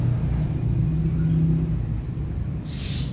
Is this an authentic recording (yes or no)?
yes